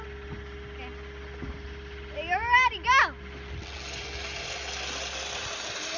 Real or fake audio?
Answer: real